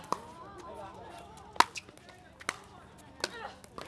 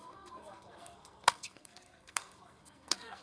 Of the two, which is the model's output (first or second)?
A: second